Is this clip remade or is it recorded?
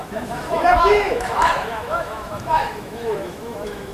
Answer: remade